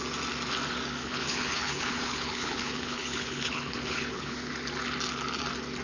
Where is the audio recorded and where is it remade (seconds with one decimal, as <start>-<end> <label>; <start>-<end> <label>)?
0.0-1.0 recorded; 1.0-4.5 remade; 4.5-5.8 recorded